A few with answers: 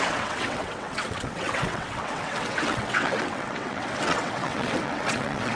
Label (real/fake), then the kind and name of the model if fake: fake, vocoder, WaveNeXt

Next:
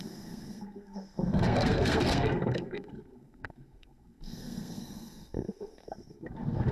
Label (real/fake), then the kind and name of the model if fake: fake, codec, SNAC